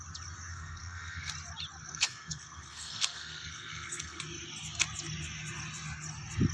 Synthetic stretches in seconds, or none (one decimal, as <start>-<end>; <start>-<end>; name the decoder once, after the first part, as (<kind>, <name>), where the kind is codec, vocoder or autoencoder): 0.5-1.3 (codec, SNAC); 1.9-4.2